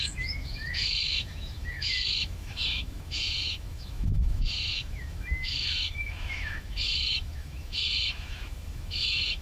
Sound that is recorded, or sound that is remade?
remade